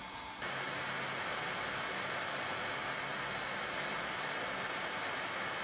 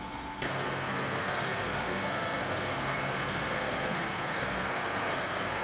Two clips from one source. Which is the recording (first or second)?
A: first